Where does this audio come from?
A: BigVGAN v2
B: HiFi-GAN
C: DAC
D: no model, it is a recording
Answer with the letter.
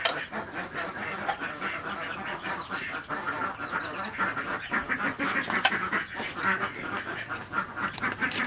D